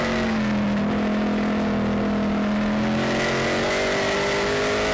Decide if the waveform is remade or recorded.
recorded